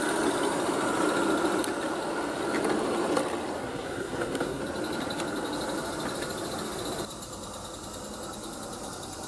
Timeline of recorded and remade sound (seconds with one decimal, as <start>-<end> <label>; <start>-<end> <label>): 0.0-3.6 recorded; 3.6-4.6 remade; 4.6-9.3 recorded